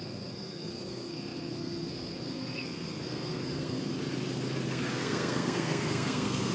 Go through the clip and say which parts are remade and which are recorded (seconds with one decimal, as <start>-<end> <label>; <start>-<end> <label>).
0.0-3.9 remade; 3.9-4.7 recorded; 4.7-6.5 remade

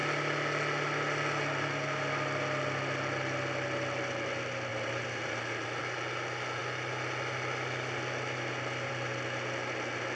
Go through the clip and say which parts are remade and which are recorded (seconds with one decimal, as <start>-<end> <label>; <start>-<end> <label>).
0.0-4.7 recorded; 4.7-5.8 remade; 5.8-10.2 recorded